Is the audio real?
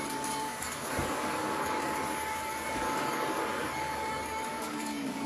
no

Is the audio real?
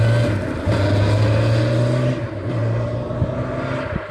yes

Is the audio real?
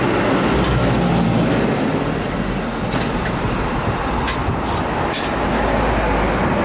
yes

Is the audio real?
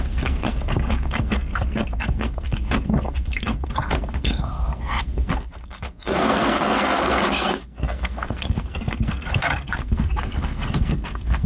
no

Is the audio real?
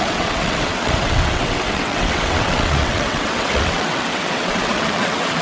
no